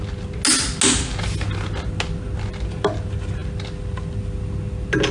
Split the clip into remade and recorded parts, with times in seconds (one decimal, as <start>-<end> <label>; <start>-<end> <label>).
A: 0.0-5.1 recorded